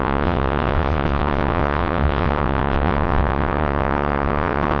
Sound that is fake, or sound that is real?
fake